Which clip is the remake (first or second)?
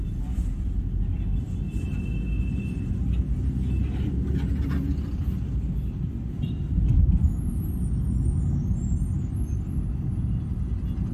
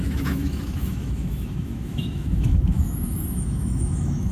second